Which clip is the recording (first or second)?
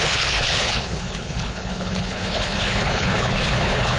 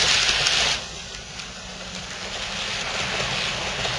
second